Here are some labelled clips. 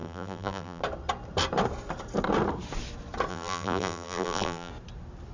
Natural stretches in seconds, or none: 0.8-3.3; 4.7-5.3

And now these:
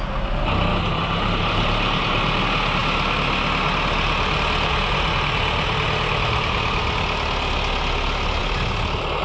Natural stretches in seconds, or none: 0.0-0.7; 2.4-9.2

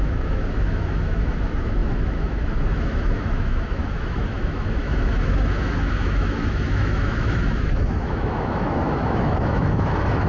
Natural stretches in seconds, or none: none

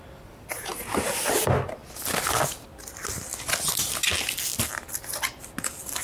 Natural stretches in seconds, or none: 0.0-6.0

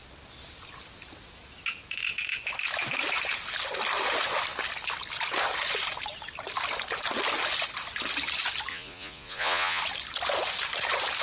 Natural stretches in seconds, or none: 0.0-8.7; 9.8-11.2